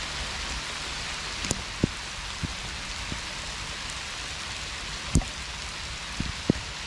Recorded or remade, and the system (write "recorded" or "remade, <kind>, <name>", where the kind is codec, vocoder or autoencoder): recorded